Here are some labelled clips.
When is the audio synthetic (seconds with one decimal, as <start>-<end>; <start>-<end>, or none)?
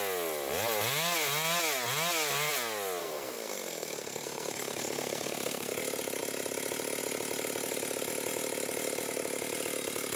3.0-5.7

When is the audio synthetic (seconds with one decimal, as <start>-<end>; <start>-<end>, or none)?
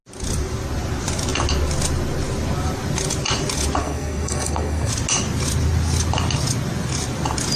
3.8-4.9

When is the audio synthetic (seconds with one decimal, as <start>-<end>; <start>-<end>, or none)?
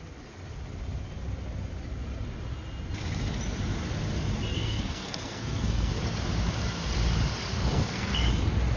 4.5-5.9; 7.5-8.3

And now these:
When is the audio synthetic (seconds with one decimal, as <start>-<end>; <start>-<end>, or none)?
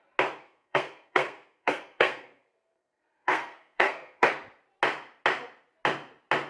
0.4-4.3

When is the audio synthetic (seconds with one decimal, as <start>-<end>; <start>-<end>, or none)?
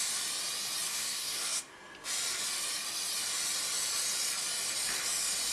0.9-1.7